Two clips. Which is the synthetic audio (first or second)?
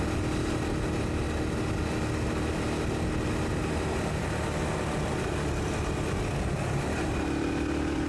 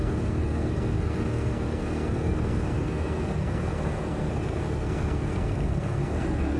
second